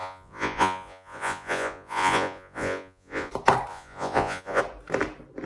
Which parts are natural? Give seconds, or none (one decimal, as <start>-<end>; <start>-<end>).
3.3-3.7; 4.6-5.5